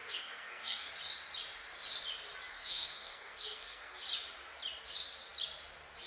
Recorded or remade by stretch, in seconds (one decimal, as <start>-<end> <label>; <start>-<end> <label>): 0.0-0.9 remade; 0.9-2.5 recorded; 2.5-4.0 remade; 4.0-6.1 recorded

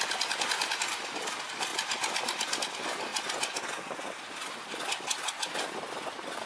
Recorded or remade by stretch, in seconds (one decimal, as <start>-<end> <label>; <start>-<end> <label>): 0.0-6.5 recorded

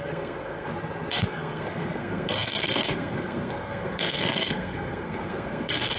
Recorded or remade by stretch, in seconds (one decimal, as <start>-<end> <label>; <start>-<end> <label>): 0.0-0.7 remade; 0.7-1.2 recorded; 1.2-6.0 remade

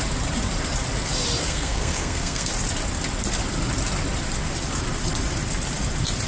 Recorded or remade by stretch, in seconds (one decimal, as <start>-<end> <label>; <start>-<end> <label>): 0.0-1.4 recorded; 1.4-2.5 remade; 2.5-6.3 recorded